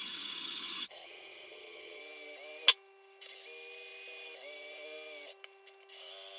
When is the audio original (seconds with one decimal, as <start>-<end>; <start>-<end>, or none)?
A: 2.0-6.4